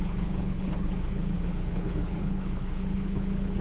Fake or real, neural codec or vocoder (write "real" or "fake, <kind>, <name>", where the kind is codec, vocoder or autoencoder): fake, codec, HILCodec